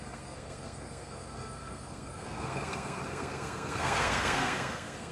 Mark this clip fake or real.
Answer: fake